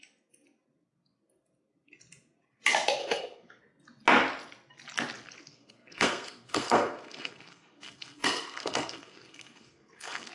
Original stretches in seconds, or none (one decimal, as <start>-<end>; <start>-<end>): 0.0-3.0; 3.6-5.5